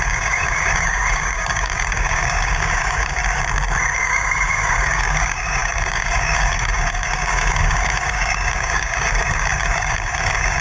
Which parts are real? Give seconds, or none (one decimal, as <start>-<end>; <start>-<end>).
3.2-4.0